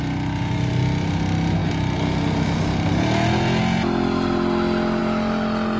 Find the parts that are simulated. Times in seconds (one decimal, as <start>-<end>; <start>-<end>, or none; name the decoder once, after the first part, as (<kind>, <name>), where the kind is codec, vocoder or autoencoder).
none